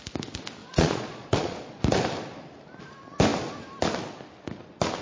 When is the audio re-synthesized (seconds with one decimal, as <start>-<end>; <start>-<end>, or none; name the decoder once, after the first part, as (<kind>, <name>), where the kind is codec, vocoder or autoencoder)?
0.6-1.8 (vocoder, Vocos)